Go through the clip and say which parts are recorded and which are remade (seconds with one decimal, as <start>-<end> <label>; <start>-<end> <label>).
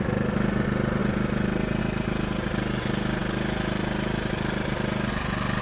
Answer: 0.0-5.6 recorded